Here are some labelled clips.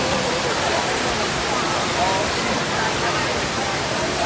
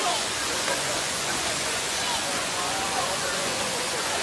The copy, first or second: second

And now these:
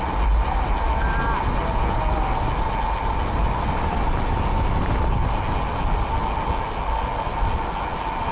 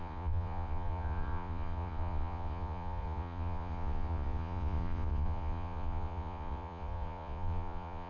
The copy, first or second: second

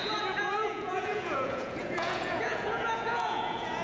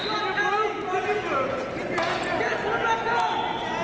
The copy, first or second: first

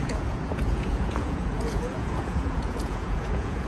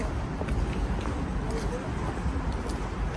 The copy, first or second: first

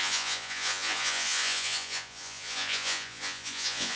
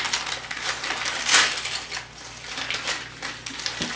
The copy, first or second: first